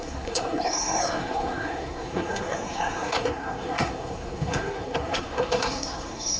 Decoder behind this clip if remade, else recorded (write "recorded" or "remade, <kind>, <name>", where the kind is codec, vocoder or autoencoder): remade, codec, SNAC